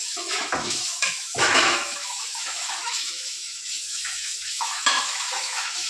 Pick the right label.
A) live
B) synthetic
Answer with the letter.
B